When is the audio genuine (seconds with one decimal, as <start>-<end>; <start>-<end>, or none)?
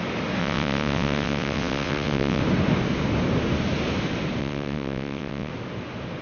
0.0-0.4; 2.4-4.4; 5.5-6.2